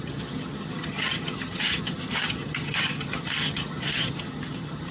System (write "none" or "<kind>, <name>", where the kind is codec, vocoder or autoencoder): vocoder, HiFi-GAN